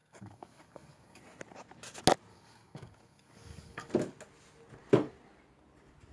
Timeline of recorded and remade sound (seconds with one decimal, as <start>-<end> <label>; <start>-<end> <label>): 0.0-1.2 remade; 1.2-2.3 recorded; 2.3-3.9 remade; 3.9-6.1 recorded